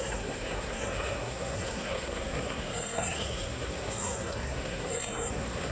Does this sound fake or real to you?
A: fake